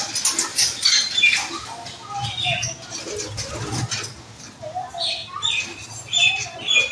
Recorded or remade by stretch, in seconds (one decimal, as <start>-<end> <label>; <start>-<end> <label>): 0.0-0.5 recorded; 0.5-1.5 remade; 1.5-5.2 recorded; 5.2-6.3 remade; 6.3-6.9 recorded

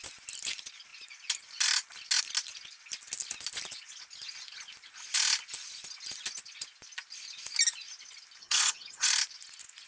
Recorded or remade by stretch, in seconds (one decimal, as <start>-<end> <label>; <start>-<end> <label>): 0.0-8.4 recorded; 8.4-9.1 remade; 9.1-9.9 recorded

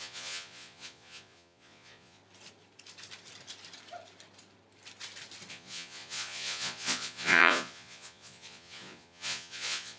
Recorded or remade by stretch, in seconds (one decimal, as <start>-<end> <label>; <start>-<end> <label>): 0.0-2.2 remade; 2.2-5.5 recorded; 5.5-10.0 remade

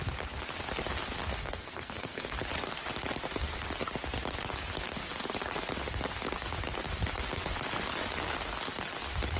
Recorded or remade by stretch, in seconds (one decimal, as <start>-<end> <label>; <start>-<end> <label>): 0.0-1.4 recorded; 1.4-2.3 remade; 2.3-9.4 recorded

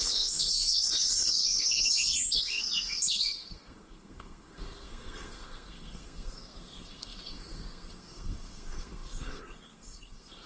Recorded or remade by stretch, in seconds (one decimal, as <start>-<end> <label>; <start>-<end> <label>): 0.0-10.5 remade

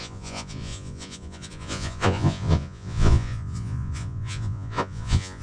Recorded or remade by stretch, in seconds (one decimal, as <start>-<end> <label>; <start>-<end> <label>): 0.0-5.4 remade